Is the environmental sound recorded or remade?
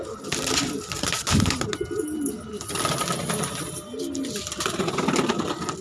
recorded